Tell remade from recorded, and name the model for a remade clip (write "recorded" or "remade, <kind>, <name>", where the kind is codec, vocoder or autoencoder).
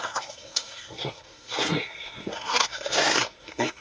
remade, codec, SNAC